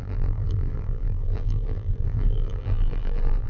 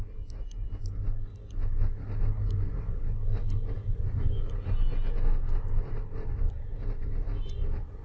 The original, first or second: second